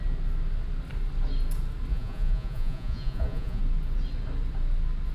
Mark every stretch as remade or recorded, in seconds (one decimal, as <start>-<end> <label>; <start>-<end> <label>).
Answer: 0.0-1.9 recorded; 1.9-3.6 remade; 3.6-5.1 recorded